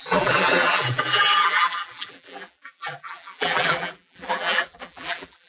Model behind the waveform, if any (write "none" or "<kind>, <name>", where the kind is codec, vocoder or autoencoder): vocoder, BigVGAN v2